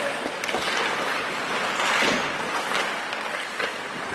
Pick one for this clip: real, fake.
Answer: real